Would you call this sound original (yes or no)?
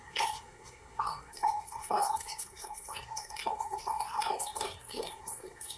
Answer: no